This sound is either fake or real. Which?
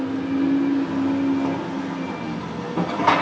real